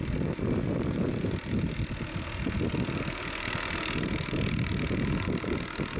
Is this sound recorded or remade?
recorded